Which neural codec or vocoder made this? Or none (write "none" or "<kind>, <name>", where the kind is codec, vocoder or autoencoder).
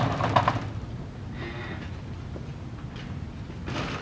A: none